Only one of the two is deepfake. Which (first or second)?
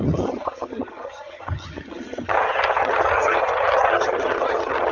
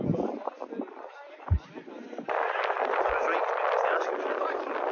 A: first